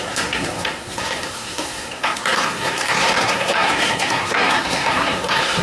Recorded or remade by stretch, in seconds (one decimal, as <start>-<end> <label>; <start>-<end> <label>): 0.0-5.6 remade